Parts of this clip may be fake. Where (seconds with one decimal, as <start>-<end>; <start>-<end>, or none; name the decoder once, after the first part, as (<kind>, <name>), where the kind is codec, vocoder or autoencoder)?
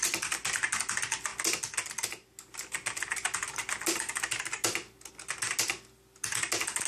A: none